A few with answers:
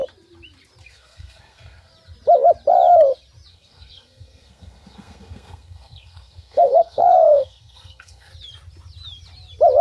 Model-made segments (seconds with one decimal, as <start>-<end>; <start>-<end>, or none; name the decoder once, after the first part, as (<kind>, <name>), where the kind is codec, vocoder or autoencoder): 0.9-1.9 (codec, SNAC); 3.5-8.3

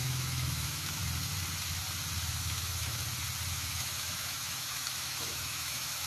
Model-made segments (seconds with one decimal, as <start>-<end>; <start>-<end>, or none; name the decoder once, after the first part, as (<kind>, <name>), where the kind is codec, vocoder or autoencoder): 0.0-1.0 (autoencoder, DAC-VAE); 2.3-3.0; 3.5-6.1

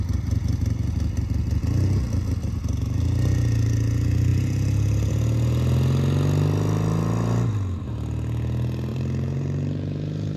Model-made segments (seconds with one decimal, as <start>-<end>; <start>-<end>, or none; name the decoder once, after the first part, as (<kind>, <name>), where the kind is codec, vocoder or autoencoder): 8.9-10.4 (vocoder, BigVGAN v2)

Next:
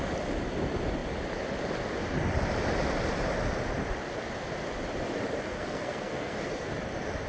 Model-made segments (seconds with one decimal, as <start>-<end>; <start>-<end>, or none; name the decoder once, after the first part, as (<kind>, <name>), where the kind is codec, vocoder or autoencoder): 5.5-6.7 (codec, SNAC)

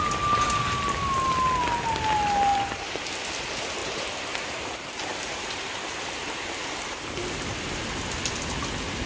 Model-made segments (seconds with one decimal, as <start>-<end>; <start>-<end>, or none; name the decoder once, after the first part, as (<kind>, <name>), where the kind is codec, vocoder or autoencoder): 2.5-3.2 (vocoder, BigVGAN v2); 3.8-7.6